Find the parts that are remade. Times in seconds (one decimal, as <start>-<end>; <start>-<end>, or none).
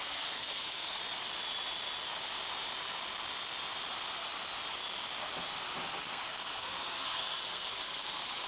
0.0-1.0; 6.1-8.5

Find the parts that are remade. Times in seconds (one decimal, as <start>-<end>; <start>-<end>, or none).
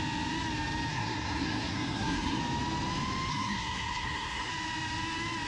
0.9-2.4; 3.3-4.5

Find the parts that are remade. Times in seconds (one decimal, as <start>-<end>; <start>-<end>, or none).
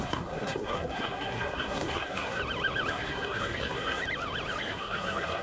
0.0-2.4; 2.9-4.0; 4.6-5.4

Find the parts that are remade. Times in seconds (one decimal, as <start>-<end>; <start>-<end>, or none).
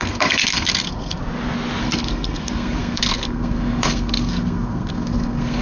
0.0-1.2; 1.8-5.6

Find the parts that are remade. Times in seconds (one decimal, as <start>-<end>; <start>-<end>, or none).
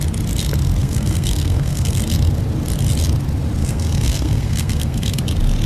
0.8-2.0; 3.6-5.2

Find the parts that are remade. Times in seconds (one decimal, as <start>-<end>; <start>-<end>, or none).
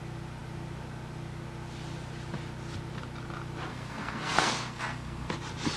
3.7-5.3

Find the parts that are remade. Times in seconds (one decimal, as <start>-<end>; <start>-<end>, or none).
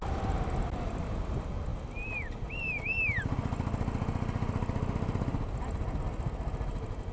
none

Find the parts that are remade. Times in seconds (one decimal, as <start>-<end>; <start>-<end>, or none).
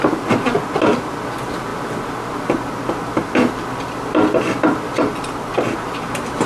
none